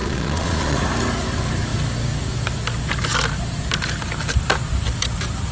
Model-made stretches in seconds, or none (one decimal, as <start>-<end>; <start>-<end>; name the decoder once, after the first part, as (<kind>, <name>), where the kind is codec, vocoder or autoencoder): 0.0-0.8 (vocoder, Vocos)